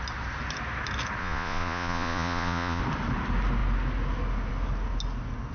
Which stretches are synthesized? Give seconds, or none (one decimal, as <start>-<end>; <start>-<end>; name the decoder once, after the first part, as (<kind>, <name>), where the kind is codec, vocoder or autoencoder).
1.2-2.8 (vocoder, Vocos)

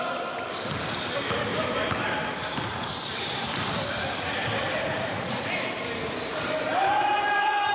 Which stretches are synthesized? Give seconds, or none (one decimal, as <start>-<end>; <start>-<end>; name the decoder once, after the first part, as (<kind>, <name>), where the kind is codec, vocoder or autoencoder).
4.6-5.5 (vocoder, Vocos)